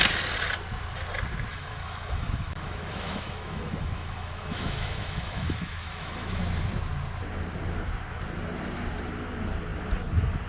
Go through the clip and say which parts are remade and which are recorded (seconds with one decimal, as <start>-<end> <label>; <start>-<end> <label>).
0.0-1.5 recorded; 1.5-6.4 remade; 6.4-10.5 recorded